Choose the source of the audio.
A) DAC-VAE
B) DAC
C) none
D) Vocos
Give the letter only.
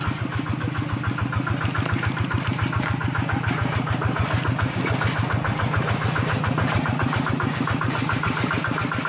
C